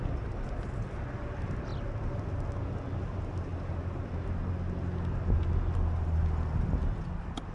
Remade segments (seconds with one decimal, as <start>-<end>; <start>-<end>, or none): none